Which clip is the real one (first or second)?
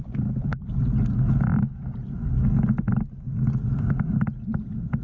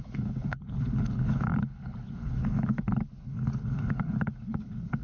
first